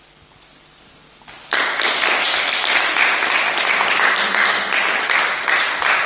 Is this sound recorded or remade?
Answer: recorded